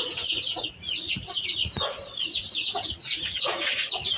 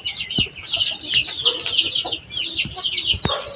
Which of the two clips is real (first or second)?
second